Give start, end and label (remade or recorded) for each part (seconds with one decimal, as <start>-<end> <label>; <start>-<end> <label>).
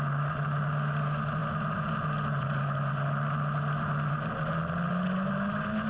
0.0-5.9 recorded